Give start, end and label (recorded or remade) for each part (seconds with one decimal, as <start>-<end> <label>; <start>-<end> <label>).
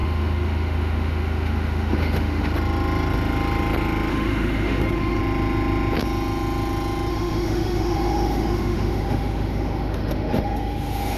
0.0-2.5 remade; 2.5-4.1 recorded; 4.1-5.2 remade; 5.2-7.1 recorded; 7.1-11.2 remade